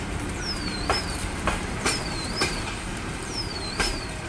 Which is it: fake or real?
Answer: fake